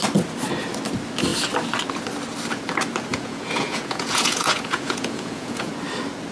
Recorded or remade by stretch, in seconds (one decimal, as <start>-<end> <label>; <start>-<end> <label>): 0.0-3.1 recorded; 3.1-5.7 remade; 5.7-6.3 recorded